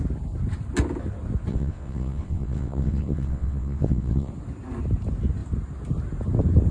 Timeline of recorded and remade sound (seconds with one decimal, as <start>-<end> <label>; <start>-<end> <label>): 0.0-1.5 recorded; 1.5-4.3 remade; 4.3-6.7 recorded